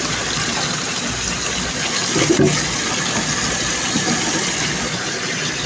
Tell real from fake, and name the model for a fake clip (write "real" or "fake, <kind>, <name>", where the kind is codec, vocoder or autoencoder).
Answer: real